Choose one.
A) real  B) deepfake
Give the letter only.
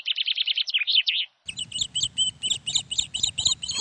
A